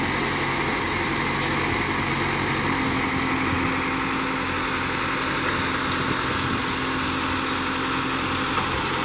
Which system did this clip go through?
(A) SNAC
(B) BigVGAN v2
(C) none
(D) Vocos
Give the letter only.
C